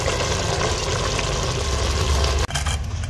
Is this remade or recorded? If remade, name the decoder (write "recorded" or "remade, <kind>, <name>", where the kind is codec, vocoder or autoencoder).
recorded